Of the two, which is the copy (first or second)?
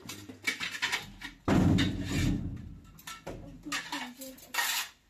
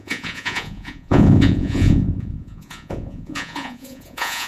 second